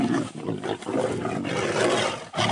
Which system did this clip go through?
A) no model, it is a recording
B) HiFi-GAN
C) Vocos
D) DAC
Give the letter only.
A